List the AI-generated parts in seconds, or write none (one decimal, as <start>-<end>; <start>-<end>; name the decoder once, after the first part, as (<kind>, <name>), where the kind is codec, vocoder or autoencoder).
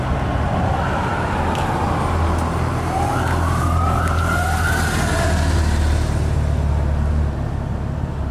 none